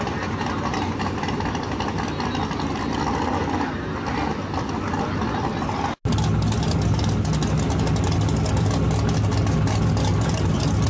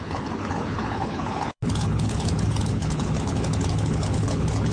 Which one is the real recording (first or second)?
first